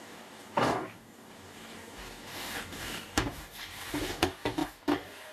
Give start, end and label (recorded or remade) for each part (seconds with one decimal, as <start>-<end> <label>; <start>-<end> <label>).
0.0-5.3 remade